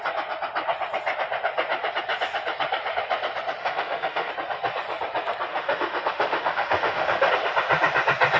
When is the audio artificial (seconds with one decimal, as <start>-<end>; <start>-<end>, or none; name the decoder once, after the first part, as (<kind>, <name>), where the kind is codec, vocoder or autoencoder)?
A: 3.6-4.3 (autoencoder, DAC-VAE); 5.5-7.3